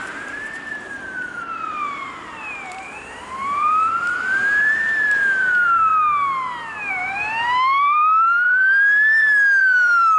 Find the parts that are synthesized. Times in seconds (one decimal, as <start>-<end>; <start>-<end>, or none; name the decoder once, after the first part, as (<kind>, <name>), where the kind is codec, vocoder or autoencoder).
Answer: 0.0-5.9 (vocoder, BigVGAN v2); 6.9-10.2